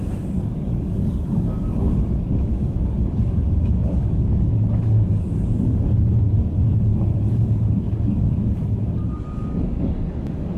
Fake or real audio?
fake